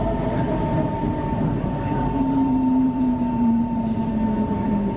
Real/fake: fake